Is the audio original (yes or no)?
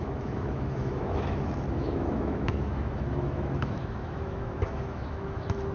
no